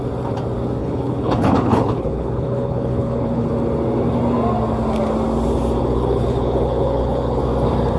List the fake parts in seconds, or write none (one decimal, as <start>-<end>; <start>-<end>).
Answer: 0.8-3.5; 5.8-7.4